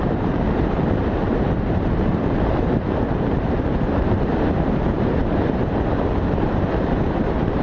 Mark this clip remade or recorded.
remade